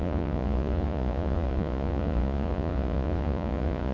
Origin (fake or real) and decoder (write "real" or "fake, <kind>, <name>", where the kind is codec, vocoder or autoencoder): fake, vocoder, Vocos